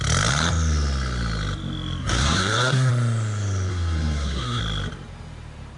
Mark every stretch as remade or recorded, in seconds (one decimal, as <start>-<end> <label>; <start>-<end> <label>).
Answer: 0.0-2.0 recorded; 2.0-2.9 remade; 2.9-3.7 recorded; 3.7-4.6 remade; 4.6-5.8 recorded